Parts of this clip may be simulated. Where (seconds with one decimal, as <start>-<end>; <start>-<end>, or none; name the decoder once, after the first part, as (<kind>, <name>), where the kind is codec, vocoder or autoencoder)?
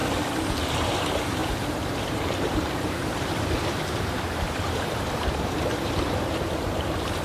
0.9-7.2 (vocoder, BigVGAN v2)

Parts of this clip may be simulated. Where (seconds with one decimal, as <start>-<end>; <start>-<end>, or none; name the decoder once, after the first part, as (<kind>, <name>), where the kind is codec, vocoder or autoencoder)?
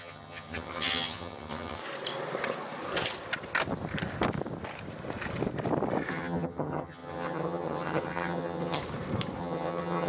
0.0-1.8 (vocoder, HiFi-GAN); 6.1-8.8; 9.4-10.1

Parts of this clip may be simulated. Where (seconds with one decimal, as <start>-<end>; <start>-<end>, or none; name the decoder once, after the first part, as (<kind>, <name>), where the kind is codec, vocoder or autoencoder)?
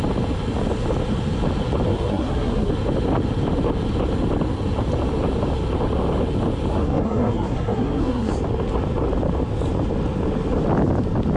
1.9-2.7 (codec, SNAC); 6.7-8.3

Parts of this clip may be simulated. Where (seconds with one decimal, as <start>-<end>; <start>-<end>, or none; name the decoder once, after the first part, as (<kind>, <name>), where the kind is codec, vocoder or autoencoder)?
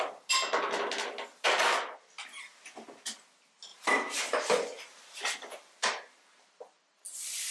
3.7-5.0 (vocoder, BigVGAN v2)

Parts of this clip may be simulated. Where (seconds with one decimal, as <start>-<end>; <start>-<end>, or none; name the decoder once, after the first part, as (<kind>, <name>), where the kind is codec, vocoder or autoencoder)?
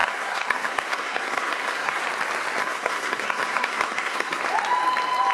0.0-2.0 (codec, SNAC); 2.6-4.4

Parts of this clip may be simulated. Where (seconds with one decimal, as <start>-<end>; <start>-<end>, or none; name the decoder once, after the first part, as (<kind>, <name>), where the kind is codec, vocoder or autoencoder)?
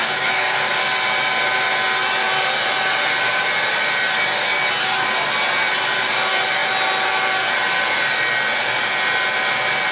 0.0-0.7 (codec, DAC)